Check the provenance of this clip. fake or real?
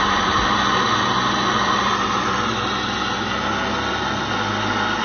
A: real